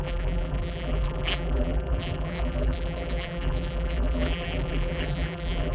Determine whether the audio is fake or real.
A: fake